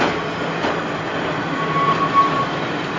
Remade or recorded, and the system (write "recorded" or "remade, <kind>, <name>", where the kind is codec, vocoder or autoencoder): recorded